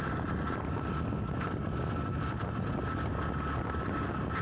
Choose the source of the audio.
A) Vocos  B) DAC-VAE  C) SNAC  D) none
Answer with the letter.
D